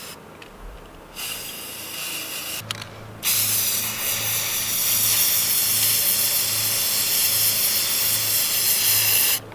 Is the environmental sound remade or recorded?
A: recorded